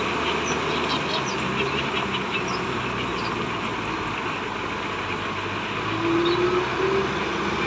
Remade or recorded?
recorded